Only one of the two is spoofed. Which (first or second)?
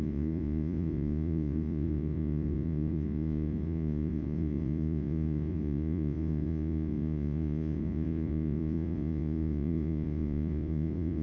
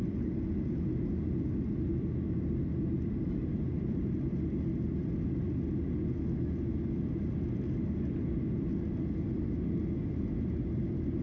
first